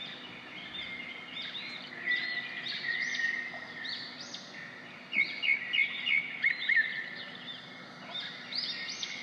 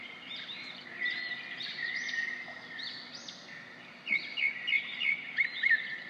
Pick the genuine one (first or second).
first